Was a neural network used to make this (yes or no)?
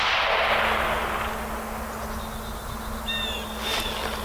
no